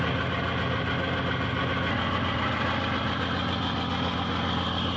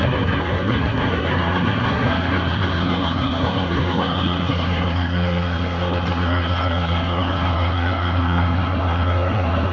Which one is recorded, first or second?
first